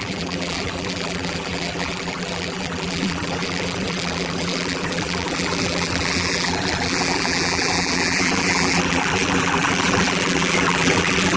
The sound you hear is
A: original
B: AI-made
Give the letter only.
B